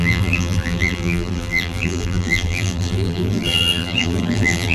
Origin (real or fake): fake